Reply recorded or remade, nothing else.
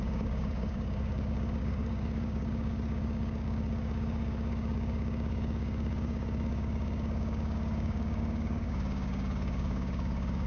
remade